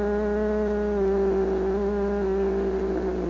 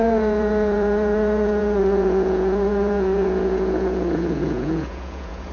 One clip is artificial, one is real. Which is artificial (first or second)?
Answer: second